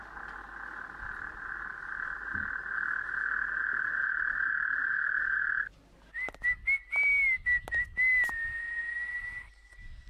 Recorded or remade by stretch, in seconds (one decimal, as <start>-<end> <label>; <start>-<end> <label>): 0.0-10.1 recorded

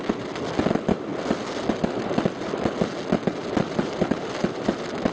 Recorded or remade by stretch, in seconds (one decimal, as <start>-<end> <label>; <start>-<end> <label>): 0.0-5.1 recorded

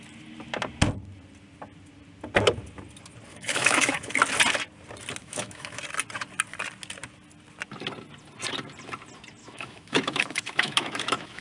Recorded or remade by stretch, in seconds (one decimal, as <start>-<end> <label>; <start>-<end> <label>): 0.0-3.3 recorded; 3.3-4.1 remade; 4.1-5.2 recorded; 5.2-5.8 remade; 5.8-9.4 recorded; 9.4-11.4 remade

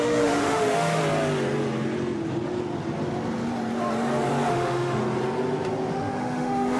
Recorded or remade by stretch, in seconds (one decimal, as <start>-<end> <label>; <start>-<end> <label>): 0.0-1.0 remade; 1.0-4.5 recorded; 4.5-5.0 remade; 5.0-5.9 recorded; 5.9-6.8 remade

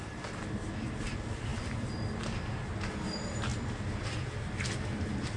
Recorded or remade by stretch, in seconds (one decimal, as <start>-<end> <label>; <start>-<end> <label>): 0.0-5.4 recorded

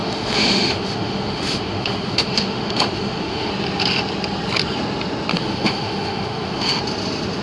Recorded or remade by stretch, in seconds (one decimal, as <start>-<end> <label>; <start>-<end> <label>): 0.0-3.5 remade; 3.5-5.3 recorded; 5.3-6.8 remade; 6.8-7.4 recorded

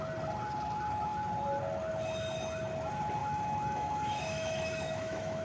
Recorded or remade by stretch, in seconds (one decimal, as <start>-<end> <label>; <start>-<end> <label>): 0.0-3.2 recorded; 3.2-5.4 remade

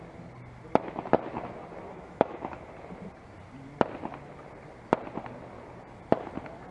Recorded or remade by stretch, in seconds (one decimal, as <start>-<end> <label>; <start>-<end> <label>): 0.0-1.9 recorded; 1.9-2.7 remade; 2.7-6.7 recorded